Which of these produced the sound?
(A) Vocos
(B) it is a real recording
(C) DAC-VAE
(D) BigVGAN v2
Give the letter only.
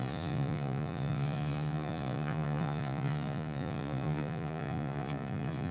A